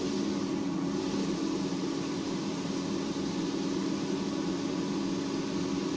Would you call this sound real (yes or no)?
yes